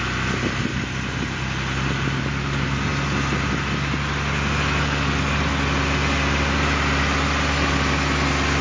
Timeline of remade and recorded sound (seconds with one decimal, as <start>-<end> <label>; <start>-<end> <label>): 0.0-8.6 recorded